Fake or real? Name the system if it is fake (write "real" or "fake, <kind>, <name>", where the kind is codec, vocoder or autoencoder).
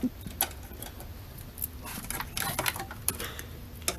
real